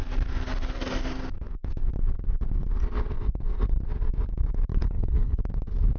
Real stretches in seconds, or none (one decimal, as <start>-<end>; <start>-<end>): 0.0-4.7; 5.4-6.0